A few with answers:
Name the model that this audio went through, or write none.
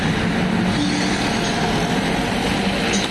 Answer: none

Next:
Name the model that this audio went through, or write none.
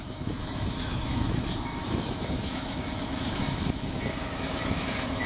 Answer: autoencoder, DAC-VAE